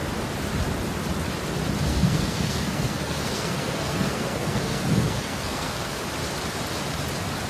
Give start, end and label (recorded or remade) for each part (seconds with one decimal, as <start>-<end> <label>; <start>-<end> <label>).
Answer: 0.0-1.9 recorded; 1.9-6.0 remade; 6.0-7.5 recorded